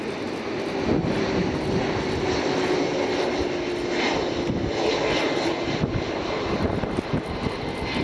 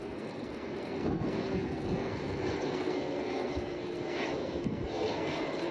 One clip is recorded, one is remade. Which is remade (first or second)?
second